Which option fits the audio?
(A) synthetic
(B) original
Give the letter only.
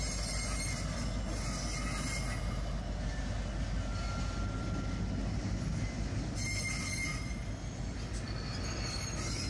B